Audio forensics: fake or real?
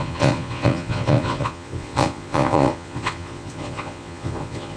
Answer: fake